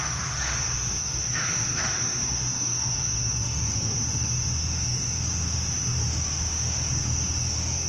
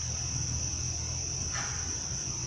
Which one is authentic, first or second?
second